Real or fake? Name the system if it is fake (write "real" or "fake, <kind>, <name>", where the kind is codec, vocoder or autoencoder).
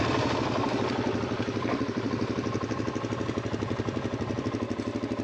real